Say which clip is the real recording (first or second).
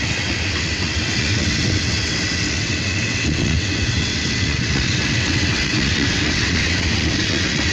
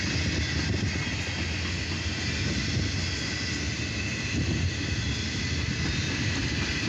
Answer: second